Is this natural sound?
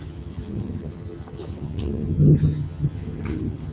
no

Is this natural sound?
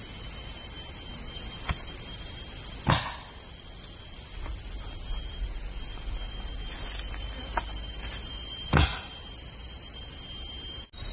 yes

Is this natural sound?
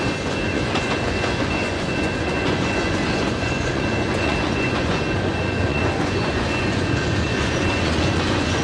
no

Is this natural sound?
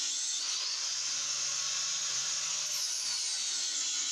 no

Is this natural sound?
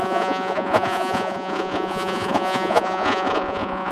no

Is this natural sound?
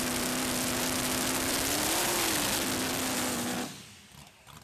yes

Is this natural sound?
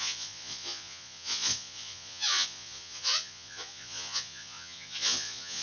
no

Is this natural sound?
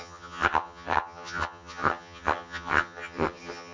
no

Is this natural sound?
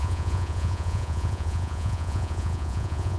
no